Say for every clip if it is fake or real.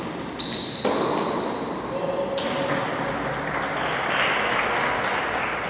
real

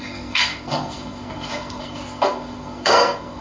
fake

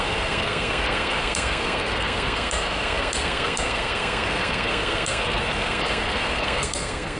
fake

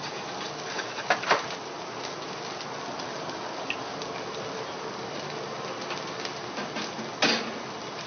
real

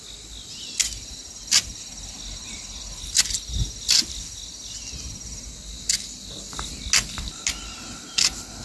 real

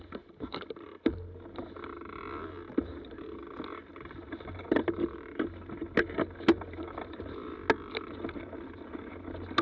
real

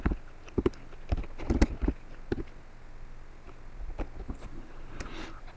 real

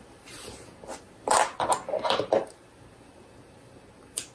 real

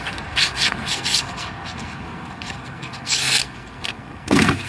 fake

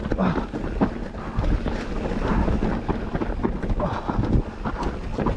real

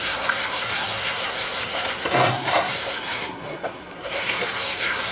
fake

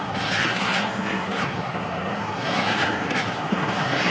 fake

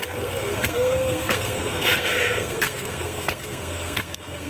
fake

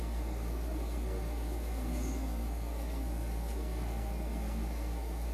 fake